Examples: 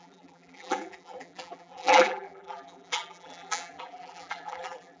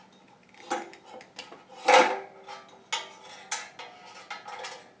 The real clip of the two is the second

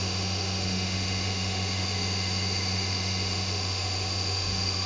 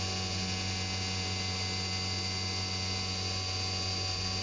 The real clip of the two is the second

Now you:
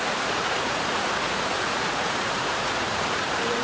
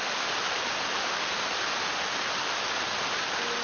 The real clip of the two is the second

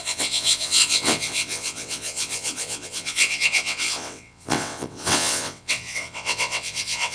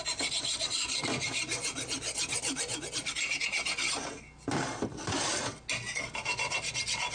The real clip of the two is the second